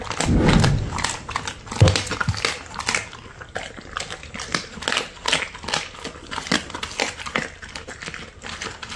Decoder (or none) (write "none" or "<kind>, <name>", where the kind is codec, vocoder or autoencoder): none